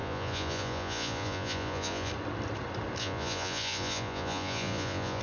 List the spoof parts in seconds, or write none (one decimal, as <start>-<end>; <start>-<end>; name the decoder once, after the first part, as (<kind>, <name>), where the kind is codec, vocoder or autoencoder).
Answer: 0.0-2.1 (vocoder, Vocos); 3.0-5.2